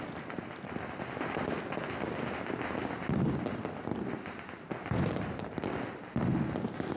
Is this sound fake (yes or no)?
no